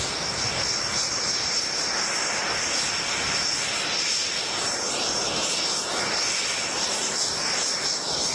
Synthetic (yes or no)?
no